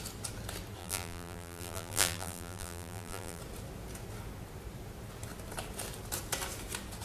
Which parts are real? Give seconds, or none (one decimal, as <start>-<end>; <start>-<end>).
0.0-0.8; 3.4-7.0